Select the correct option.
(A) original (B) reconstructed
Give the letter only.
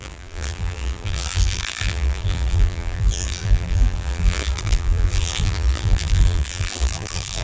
B